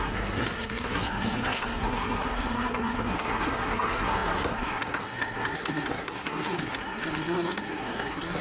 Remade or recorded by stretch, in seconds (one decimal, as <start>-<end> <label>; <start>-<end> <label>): 0.0-8.4 remade